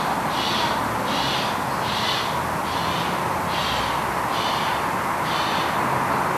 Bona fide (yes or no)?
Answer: yes